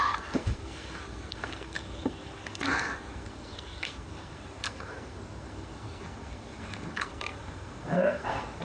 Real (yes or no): no